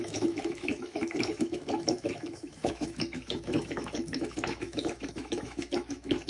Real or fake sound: fake